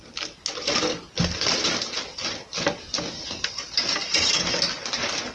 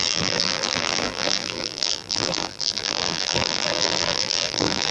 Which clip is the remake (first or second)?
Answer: second